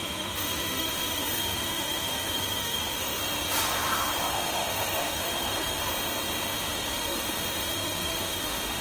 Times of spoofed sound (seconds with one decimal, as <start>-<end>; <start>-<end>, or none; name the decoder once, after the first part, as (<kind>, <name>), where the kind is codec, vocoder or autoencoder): 0.0-3.2 (autoencoder, DAC-VAE); 4.3-5.9; 6.9-8.8